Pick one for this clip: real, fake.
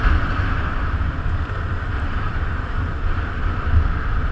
fake